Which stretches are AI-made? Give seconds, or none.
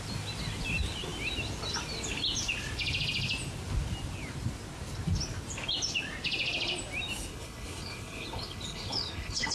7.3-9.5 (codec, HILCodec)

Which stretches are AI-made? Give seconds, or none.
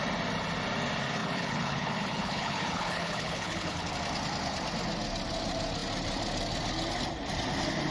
1.2-3.9 (codec, HILCodec)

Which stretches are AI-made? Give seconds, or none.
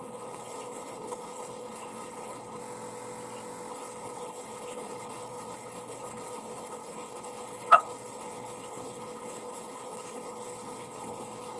0.0-2.6 (codec, HILCodec); 3.7-11.6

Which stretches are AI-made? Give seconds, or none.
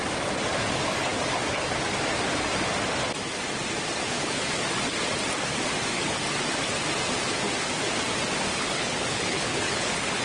4.0-4.5 (codec, HILCodec); 8.5-10.2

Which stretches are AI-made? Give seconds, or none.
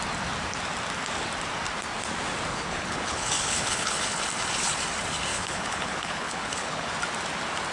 2.5-4.2 (codec, HILCodec); 5.3-6.9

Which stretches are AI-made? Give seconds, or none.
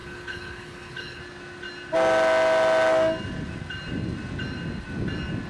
0.0-1.2 (codec, HILCodec)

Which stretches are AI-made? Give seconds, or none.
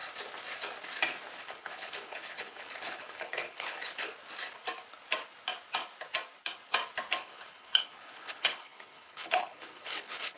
1.4-4.1 (codec, HILCodec); 7.2-10.4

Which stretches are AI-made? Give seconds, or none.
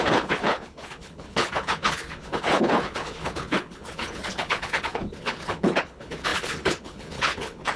0.0-7.8 (codec, HILCodec)